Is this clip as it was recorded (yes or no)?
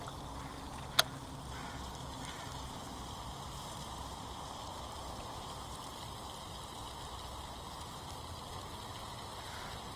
yes